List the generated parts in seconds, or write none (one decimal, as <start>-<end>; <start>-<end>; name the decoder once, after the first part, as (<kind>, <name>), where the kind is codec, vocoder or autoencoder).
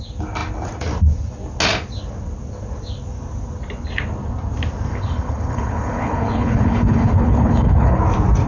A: 4.9-8.0 (codec, HILCodec)